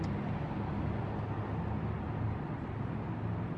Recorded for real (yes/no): yes